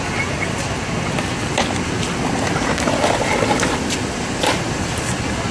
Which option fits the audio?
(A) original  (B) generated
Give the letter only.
A